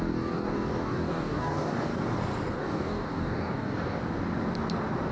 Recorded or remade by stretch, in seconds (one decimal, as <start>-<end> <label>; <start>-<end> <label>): 0.0-1.9 remade; 1.9-2.5 recorded; 2.5-4.0 remade; 4.0-5.1 recorded